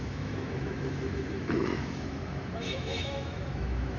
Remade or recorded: remade